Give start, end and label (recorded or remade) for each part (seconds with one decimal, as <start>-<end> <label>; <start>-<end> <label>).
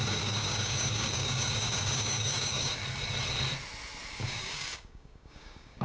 0.0-2.8 remade; 2.8-4.1 recorded; 4.1-5.8 remade